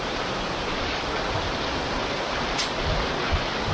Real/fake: real